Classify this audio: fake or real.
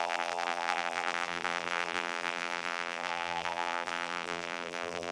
fake